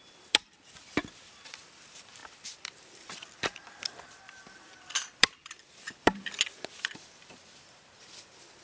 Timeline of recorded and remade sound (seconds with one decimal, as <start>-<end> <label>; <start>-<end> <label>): 0.0-8.6 remade